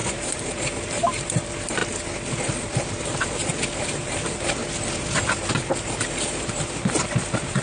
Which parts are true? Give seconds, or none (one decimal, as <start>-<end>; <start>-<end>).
1.8-2.3; 4.6-6.2